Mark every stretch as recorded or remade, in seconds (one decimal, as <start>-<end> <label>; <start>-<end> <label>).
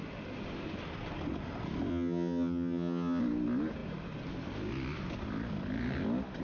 0.0-1.9 recorded; 1.9-3.2 remade; 3.2-6.4 recorded